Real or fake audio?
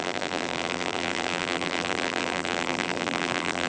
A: fake